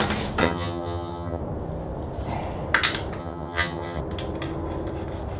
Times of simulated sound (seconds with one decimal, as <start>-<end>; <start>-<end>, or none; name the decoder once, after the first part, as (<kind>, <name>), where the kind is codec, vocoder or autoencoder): 0.4-1.4 (vocoder, HiFi-GAN); 3.2-4.0